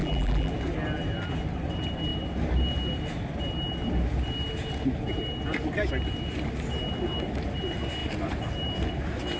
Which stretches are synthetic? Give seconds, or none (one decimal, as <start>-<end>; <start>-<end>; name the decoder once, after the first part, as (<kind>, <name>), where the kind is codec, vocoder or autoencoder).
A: 0.0-0.5 (vocoder, BigVGAN v2)